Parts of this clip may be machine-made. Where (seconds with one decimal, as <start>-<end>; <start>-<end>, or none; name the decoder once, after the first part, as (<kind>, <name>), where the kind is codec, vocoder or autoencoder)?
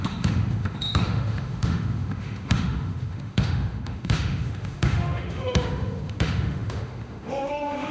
0.0-7.9 (autoencoder, DAC-VAE)